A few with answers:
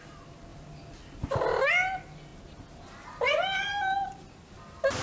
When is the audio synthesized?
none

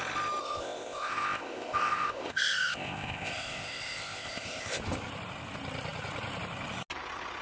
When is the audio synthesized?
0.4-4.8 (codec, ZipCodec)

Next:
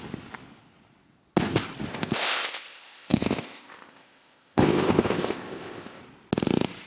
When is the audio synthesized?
1.9-6.0 (codec, ZipCodec)